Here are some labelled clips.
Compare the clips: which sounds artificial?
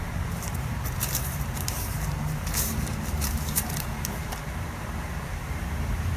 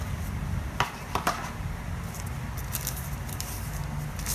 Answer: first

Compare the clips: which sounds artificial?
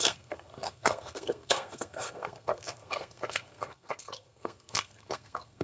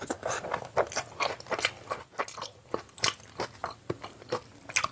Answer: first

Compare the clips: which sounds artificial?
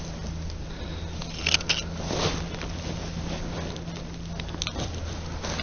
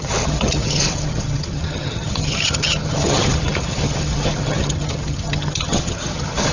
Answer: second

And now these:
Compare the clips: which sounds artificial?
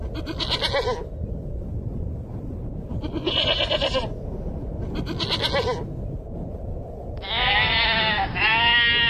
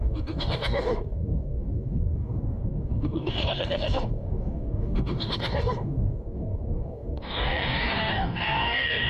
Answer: second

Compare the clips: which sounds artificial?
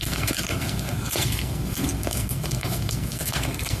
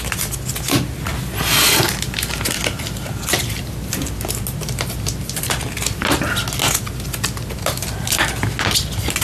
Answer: first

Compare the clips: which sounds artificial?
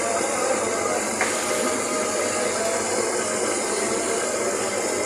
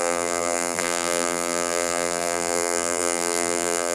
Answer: second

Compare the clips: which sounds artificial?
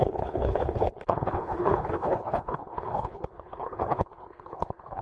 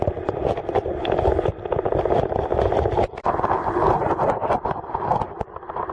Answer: first